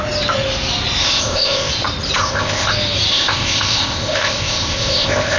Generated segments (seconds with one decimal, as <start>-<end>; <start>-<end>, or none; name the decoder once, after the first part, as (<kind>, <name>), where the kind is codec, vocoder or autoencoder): 1.0-1.7 (codec, ZipCodec); 2.2-2.7; 3.1-5.4